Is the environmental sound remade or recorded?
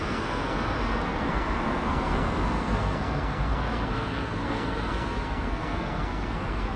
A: remade